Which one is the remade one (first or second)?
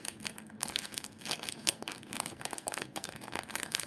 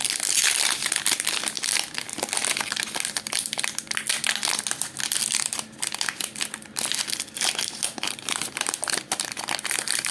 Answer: first